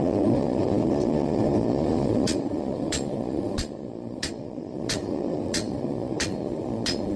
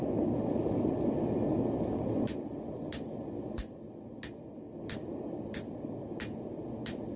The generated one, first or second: first